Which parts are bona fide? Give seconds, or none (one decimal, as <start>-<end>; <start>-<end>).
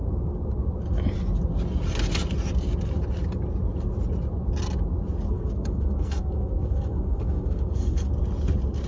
0.0-5.3; 8.1-8.9